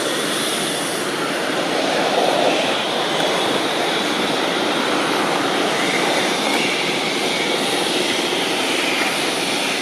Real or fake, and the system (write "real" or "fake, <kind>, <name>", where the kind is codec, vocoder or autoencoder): fake, vocoder, BigVGAN v2